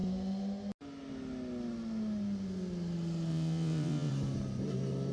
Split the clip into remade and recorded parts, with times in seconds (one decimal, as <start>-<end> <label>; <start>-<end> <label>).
0.0-3.3 recorded; 3.3-4.1 remade; 4.1-5.1 recorded